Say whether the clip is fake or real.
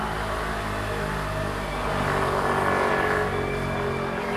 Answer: real